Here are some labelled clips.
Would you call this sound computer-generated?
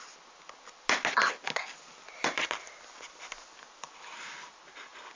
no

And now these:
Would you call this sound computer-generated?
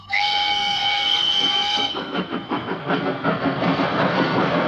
yes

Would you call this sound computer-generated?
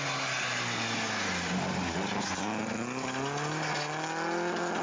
no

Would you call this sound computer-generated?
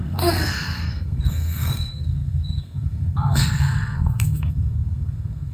yes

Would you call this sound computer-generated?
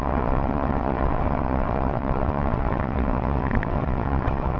yes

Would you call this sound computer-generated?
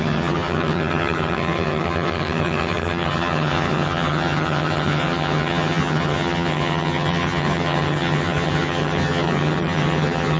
yes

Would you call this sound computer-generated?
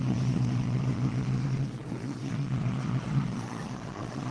yes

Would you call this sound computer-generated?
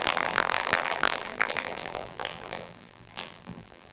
yes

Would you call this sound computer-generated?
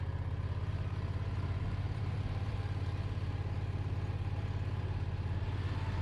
no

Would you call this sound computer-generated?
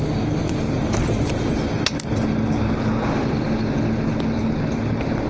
no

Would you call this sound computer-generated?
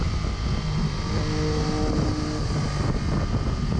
no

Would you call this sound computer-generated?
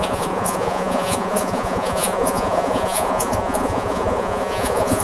yes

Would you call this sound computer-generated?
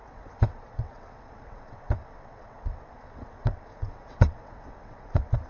yes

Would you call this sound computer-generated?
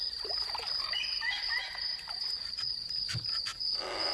no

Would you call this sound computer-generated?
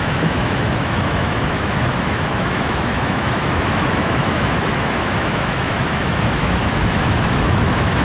yes